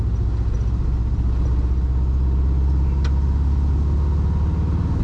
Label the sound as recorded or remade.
recorded